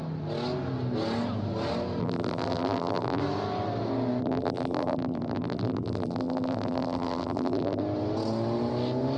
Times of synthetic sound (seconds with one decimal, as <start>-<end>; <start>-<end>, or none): 2.0-3.2; 4.2-7.8